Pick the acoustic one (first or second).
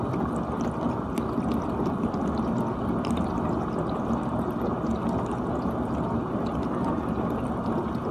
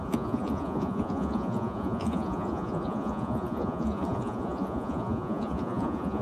first